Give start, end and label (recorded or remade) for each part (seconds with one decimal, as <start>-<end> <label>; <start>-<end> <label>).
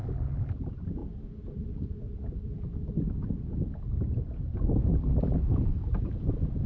0.0-0.5 remade; 0.5-4.9 recorded; 4.9-5.4 remade; 5.4-6.7 recorded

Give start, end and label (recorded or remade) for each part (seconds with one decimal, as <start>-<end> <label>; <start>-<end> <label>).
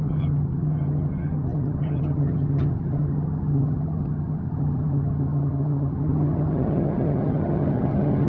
0.0-8.3 remade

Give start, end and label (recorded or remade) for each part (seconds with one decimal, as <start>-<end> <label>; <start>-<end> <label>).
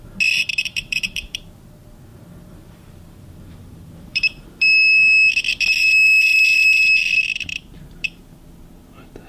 0.0-0.6 recorded; 0.6-1.4 remade; 1.4-2.1 recorded; 2.1-5.3 remade; 5.3-9.3 recorded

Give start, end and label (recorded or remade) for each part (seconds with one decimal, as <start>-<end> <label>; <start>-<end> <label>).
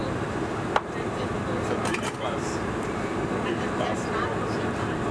0.0-1.4 remade; 1.4-1.9 recorded; 1.9-3.5 remade; 3.5-5.1 recorded